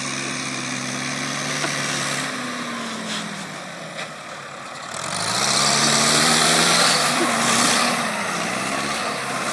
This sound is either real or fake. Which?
fake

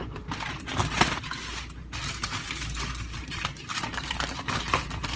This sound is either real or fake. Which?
fake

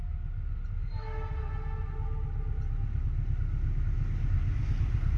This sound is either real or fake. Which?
real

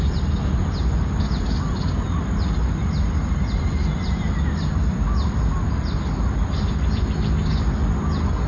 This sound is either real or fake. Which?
real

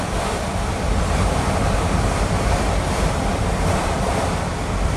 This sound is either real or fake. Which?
fake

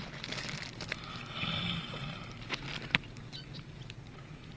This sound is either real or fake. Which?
real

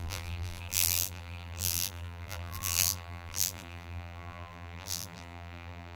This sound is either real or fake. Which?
fake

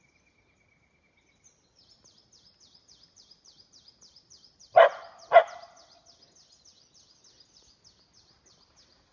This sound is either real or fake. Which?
real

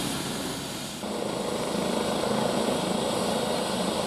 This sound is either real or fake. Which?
real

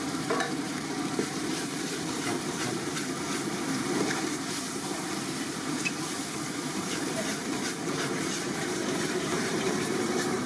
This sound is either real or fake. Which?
fake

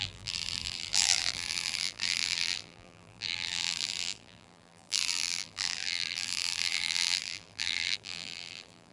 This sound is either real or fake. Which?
fake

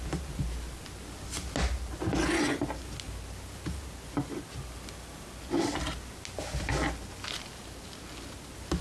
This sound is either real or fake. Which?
real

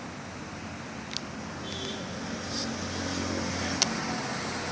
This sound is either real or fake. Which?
real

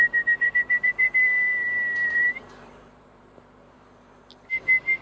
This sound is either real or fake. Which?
fake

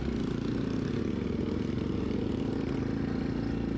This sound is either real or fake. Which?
real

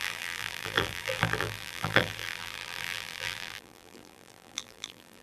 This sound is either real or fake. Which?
fake